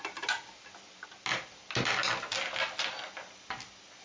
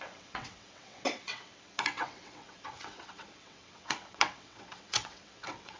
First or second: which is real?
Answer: first